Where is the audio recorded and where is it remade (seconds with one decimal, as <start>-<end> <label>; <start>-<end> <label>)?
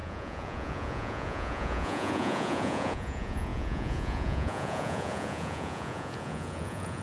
0.0-7.0 remade